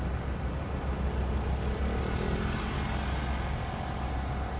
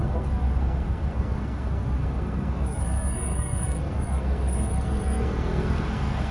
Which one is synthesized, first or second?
second